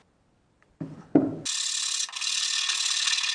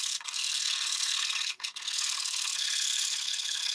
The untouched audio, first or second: first